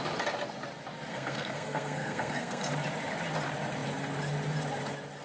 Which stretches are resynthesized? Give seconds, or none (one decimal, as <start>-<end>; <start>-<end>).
1.1-2.7